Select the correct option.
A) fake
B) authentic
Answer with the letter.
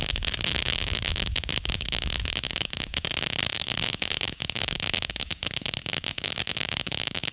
A